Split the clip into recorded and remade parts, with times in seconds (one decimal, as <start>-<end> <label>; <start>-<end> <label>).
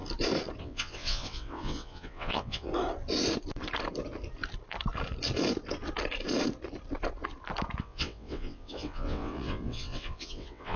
0.0-0.6 recorded; 0.6-2.7 remade; 2.7-7.8 recorded; 7.8-10.8 remade